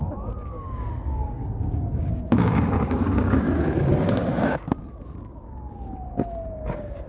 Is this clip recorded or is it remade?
remade